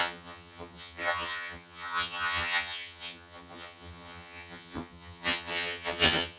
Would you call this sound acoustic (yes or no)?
no